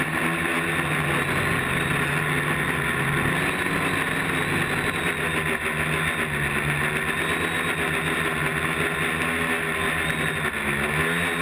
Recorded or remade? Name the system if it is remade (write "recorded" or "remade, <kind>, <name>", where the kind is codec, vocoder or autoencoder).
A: recorded